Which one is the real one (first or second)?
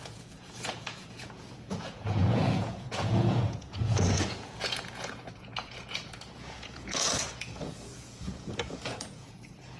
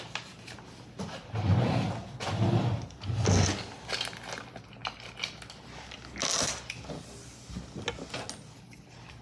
second